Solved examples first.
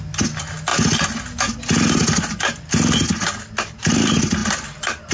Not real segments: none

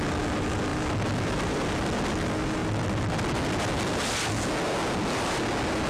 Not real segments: none

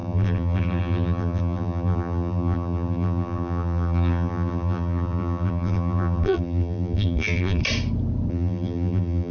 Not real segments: 0.0-7.6; 8.3-9.3

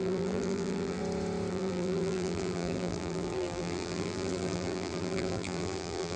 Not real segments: 0.0-1.0; 1.5-6.2

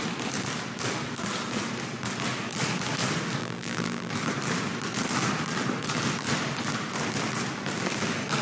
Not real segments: 3.4-4.1

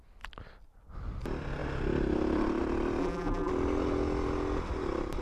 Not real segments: 3.0-3.5